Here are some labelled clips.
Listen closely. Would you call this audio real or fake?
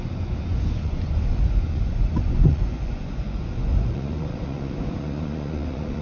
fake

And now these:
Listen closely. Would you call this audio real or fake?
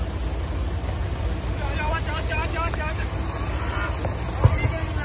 real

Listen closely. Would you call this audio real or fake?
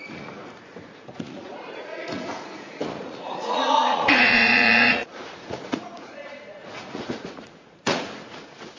fake